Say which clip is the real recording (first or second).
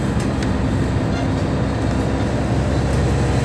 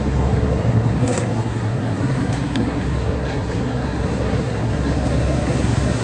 first